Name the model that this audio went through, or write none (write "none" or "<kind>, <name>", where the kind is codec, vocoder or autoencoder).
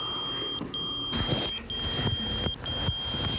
none